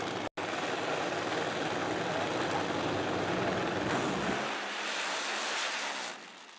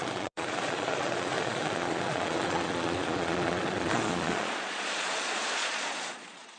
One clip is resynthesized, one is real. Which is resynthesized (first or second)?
second